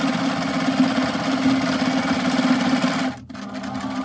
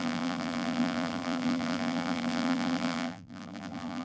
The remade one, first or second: second